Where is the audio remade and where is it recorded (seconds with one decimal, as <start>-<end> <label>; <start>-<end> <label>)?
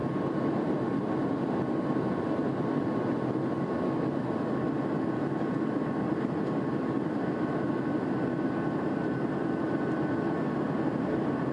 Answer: 0.0-0.8 remade; 0.8-11.5 recorded